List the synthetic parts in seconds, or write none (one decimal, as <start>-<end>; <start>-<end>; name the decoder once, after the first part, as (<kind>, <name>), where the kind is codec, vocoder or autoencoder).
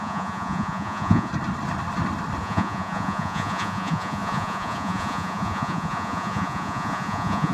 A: 0.0-1.3 (vocoder, Vocos); 2.4-7.5